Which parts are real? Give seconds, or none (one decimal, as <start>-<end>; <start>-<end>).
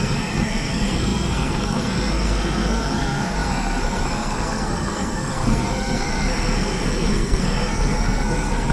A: none